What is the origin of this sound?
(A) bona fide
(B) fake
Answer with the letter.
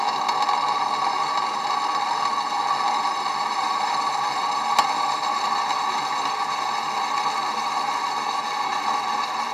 A